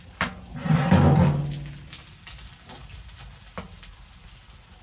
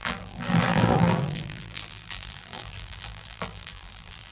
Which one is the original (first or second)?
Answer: first